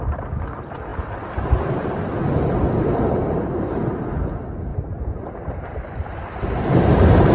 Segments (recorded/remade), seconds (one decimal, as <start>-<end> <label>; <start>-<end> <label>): 0.0-7.3 recorded